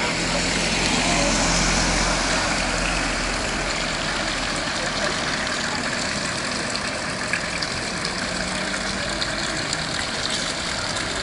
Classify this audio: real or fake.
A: real